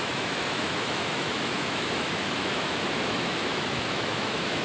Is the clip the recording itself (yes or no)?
no